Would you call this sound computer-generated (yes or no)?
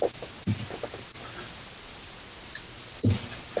no